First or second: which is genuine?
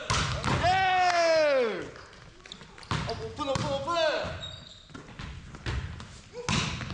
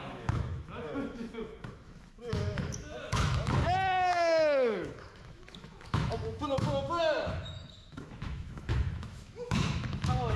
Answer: first